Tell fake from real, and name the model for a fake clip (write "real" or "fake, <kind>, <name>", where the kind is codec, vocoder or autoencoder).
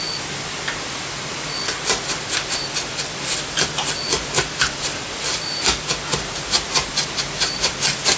real